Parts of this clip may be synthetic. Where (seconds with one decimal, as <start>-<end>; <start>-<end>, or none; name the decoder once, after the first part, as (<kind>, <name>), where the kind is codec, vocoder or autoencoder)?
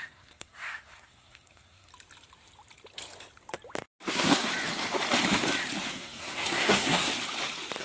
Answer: 0.0-1.9 (codec, SNAC); 4.1-4.5; 5.9-7.1